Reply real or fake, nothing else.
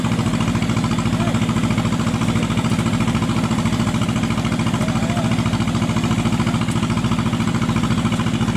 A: real